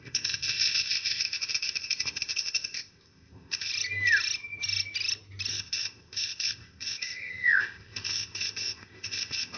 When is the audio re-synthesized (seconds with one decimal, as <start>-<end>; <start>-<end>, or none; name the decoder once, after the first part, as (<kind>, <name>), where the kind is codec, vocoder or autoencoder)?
0.0-3.7 (codec, ZipCodec); 5.5-9.6